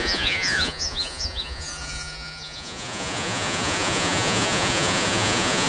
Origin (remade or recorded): remade